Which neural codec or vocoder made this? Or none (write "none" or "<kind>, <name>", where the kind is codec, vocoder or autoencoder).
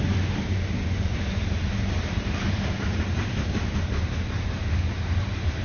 vocoder, BigVGAN v2